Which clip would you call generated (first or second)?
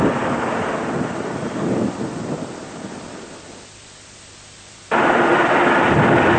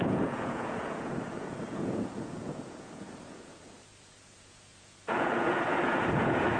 second